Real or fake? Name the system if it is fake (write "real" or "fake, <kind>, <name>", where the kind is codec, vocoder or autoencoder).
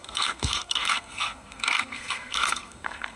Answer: fake, codec, SNAC